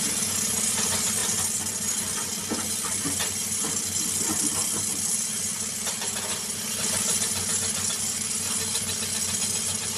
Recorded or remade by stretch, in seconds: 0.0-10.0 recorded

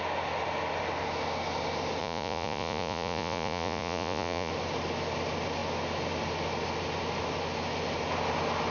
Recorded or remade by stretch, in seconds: 0.0-2.0 recorded; 2.0-4.5 remade; 4.5-8.7 recorded

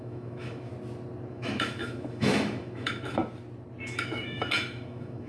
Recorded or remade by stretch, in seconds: 0.0-0.7 remade; 0.7-1.3 recorded; 1.3-3.2 remade; 3.2-3.8 recorded; 3.8-5.3 remade

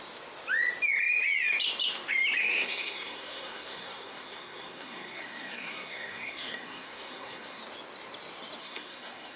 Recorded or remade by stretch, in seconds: 0.0-2.4 recorded; 2.4-7.6 remade; 7.6-8.6 recorded; 8.6-9.4 remade